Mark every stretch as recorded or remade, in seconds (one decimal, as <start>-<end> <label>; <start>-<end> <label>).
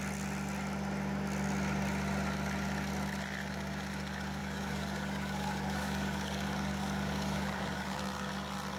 0.0-4.4 recorded; 4.4-8.3 remade; 8.3-8.8 recorded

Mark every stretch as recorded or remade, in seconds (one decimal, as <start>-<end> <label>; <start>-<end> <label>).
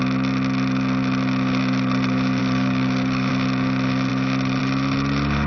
0.0-2.4 recorded; 2.4-3.3 remade; 3.3-5.5 recorded